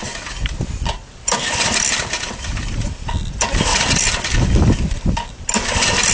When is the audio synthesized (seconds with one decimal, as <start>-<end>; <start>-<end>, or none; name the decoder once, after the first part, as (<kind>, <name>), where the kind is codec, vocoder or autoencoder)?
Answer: none